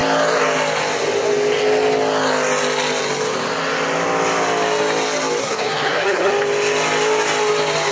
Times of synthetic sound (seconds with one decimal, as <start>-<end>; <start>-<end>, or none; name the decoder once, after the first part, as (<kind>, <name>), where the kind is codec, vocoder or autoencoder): 5.4-6.3 (codec, SNAC)